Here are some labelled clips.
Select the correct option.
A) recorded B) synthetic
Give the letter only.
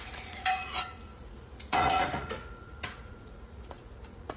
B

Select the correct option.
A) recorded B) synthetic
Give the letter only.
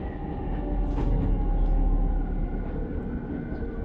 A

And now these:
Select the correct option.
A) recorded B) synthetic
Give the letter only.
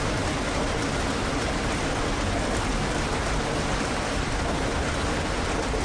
A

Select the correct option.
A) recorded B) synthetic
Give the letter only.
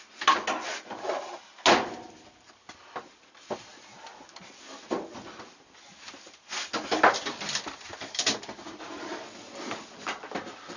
A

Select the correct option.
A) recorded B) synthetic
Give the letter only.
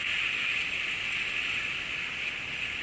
A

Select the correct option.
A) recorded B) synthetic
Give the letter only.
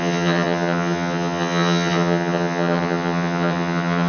B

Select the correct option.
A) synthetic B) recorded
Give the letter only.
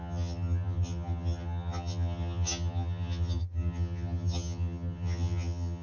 A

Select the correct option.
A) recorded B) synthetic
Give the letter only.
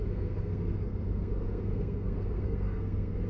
B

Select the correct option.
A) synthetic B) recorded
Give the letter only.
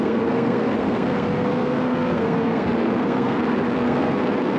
A